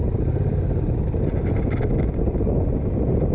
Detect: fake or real real